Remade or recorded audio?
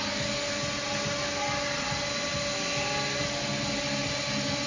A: recorded